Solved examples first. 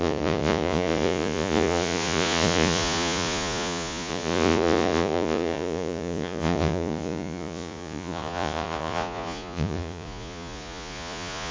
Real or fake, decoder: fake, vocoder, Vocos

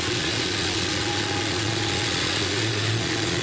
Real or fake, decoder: fake, vocoder, Vocos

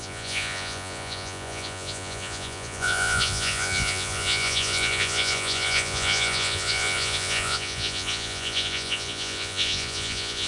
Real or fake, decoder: fake, vocoder, Vocos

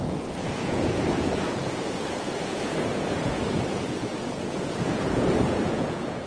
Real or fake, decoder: fake, vocoder, Vocos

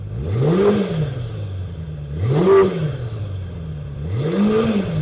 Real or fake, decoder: real